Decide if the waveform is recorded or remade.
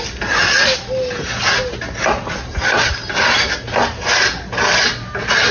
recorded